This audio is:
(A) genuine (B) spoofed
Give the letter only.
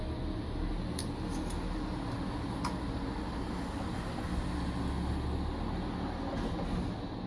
A